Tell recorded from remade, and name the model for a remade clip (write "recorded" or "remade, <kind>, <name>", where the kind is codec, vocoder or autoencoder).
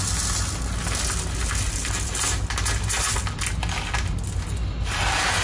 recorded